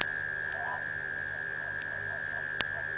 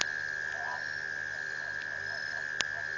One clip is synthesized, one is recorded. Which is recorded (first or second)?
second